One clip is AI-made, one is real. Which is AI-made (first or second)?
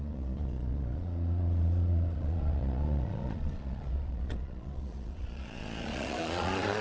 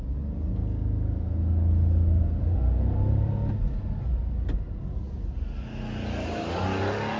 first